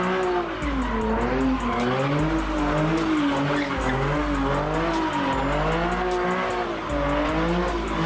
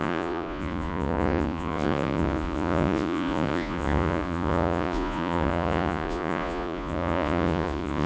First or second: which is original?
first